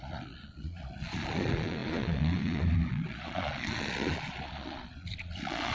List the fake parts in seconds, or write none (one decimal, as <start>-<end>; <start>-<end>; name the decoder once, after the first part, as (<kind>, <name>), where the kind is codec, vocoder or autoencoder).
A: 0.0-5.7 (vocoder, Vocos)